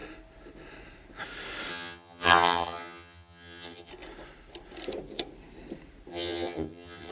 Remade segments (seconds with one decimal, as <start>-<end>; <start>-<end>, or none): 1.7-3.9; 6.1-7.1